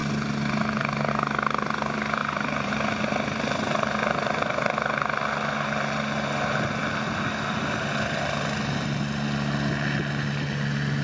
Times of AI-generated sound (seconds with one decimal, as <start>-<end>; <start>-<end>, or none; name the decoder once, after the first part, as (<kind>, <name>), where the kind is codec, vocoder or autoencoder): 2.2-2.7 (vocoder, BigVGAN v2)